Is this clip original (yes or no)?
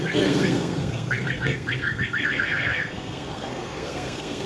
no